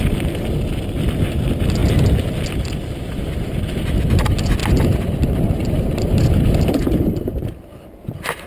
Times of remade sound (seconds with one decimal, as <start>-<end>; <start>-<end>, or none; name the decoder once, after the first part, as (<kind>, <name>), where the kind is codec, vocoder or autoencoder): 4.6-7.4 (vocoder, BigVGAN v2)